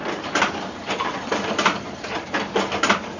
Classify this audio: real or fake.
fake